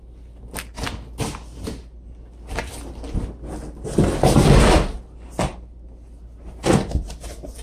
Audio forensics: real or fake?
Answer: real